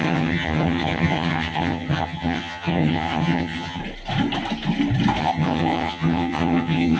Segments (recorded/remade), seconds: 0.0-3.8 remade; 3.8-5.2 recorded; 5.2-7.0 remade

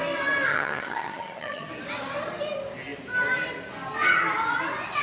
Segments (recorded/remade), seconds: 0.0-0.5 recorded; 0.5-1.7 remade; 1.7-5.0 recorded

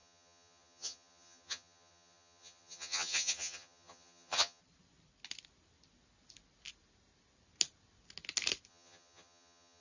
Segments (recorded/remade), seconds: 0.0-4.6 remade; 4.6-8.7 recorded; 8.7-9.8 remade

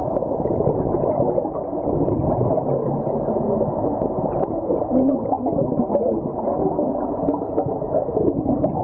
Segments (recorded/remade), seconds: 0.0-8.8 recorded